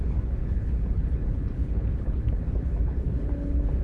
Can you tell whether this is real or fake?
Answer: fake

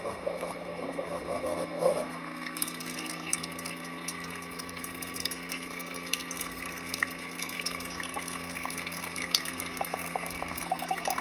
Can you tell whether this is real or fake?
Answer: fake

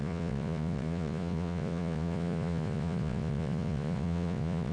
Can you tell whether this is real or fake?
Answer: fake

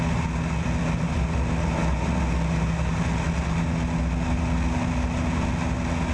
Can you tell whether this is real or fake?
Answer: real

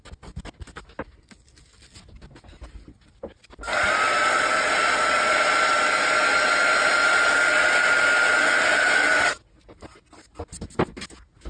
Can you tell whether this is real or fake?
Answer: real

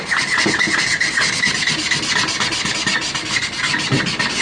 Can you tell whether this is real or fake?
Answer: real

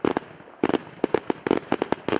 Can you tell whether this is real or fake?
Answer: real